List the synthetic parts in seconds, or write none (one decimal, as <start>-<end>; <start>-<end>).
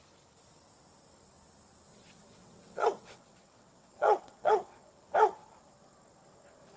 1.9-5.0